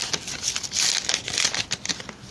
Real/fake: real